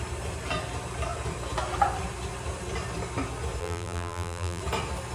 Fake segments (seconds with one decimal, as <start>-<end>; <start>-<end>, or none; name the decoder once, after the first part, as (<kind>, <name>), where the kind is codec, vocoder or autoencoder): 3.6-4.6 (vocoder, BigVGAN v2)